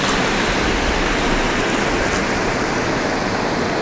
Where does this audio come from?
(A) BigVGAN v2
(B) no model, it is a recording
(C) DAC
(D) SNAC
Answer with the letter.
B